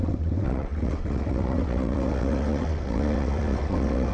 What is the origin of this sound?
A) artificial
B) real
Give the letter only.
A